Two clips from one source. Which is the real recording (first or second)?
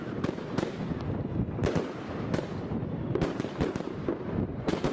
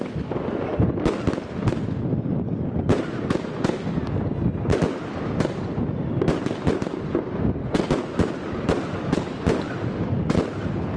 second